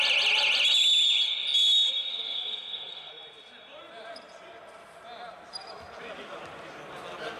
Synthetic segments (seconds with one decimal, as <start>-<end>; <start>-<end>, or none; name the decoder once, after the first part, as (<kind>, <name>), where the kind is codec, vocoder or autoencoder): 2.1-3.1 (codec, SNAC)